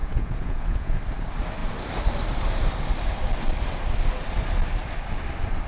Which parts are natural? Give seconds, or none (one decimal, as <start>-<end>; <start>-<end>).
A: 1.0-5.7